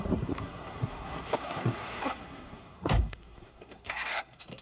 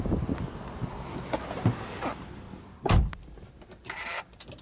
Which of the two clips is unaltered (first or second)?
second